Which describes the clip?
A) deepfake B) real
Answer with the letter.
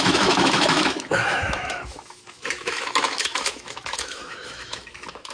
A